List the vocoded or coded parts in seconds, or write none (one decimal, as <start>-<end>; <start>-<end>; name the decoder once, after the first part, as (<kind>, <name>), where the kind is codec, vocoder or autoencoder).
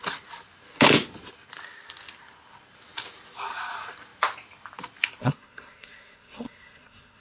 5.2-7.2 (codec, SNAC)